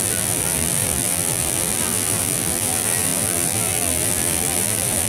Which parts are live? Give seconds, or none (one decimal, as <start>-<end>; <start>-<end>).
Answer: none